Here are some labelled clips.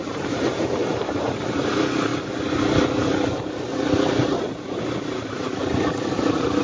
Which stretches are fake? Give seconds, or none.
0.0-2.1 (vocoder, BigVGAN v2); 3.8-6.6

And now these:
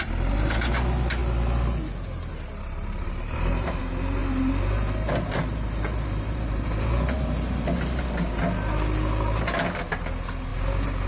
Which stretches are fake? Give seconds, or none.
3.0-3.8 (vocoder, BigVGAN v2); 4.2-8.1

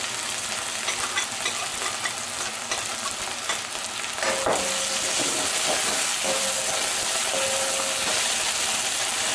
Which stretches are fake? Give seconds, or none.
none

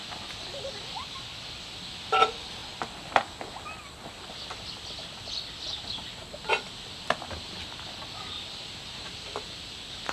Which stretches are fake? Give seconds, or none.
0.6-2.6 (vocoder, BigVGAN v2); 6.9-10.1

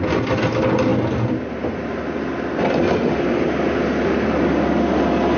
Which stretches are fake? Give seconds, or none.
none

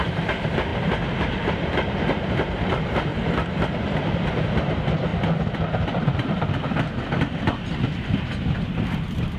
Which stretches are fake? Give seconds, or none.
0.0-0.7 (vocoder, BigVGAN v2); 1.3-3.1; 4.3-5.1; 8.0-9.4